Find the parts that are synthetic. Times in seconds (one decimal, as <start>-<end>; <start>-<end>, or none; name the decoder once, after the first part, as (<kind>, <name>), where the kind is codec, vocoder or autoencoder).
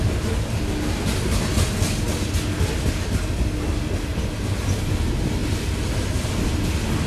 none